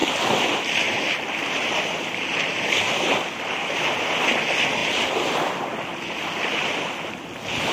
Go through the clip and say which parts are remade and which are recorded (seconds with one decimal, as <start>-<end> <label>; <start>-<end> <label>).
0.0-7.7 recorded